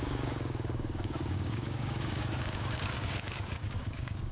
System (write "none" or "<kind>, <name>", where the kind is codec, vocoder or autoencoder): codec, DAC